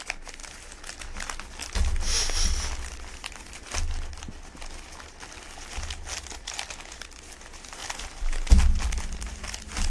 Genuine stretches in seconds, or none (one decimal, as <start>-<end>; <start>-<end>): 0.0-9.9